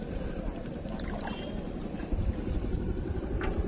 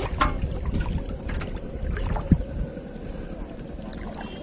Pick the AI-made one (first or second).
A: first